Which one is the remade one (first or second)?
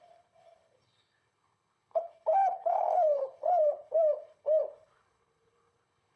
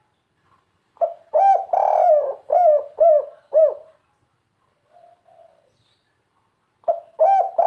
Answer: first